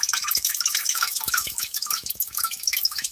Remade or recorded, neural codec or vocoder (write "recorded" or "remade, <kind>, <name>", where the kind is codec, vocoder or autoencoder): remade, autoencoder, DAC-VAE